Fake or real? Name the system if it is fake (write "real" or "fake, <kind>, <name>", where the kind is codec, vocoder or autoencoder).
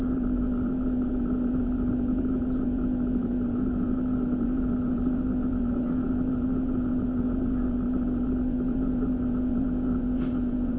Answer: fake, vocoder, Vocos